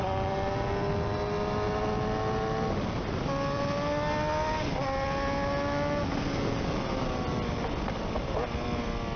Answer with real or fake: real